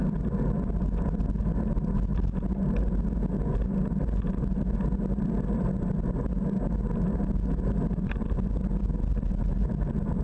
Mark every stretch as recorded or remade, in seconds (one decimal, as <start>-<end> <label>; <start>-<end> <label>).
0.0-10.2 recorded